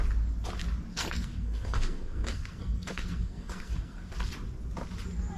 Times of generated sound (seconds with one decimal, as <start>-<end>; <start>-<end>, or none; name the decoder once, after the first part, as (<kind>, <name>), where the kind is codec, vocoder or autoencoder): 0.9-4.1 (codec, SNAC)